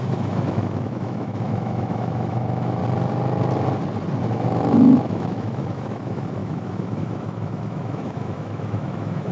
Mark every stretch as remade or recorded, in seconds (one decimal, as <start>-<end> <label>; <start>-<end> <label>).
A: 0.0-2.8 remade; 2.8-4.3 recorded; 4.3-9.3 remade